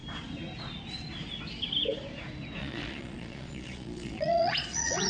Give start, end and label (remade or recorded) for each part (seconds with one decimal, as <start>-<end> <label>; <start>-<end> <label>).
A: 0.0-2.6 recorded; 2.6-5.1 remade